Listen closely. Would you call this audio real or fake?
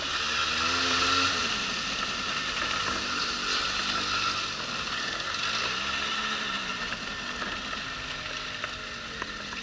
real